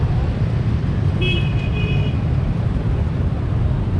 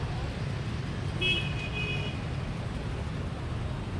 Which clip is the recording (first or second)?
second